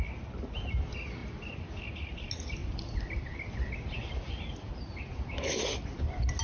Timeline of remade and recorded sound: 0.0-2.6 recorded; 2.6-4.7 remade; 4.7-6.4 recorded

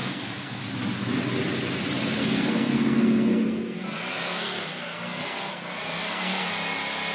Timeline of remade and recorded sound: 0.0-0.6 remade; 0.6-2.2 recorded; 2.2-6.5 remade; 6.5-7.1 recorded

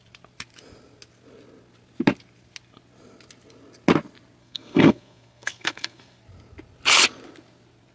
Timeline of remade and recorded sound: 0.0-4.4 recorded; 4.4-6.2 remade; 6.2-7.9 recorded

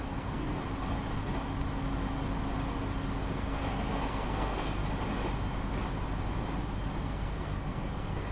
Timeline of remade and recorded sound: 0.0-0.6 remade; 0.6-3.3 recorded; 3.3-4.8 remade; 4.8-7.0 recorded; 7.0-8.3 remade

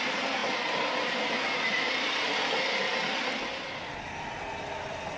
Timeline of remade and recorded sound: 0.0-5.2 recorded

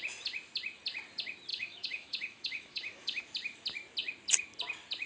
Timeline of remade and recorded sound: 0.0-1.5 recorded; 1.5-3.2 remade; 3.2-5.1 recorded